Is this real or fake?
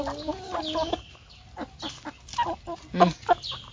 real